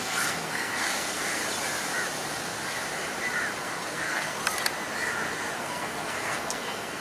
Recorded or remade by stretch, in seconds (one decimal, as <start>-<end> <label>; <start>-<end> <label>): 0.0-1.4 remade; 1.4-3.6 recorded; 3.6-4.4 remade; 4.4-5.6 recorded; 5.6-7.0 remade